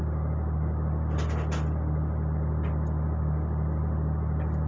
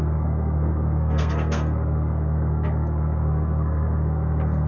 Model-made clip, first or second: second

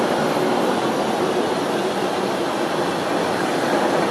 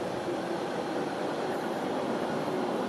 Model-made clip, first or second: second